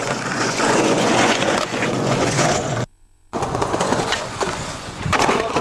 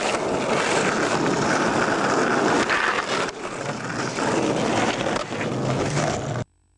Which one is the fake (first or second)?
first